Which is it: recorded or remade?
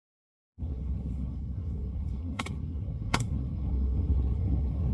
remade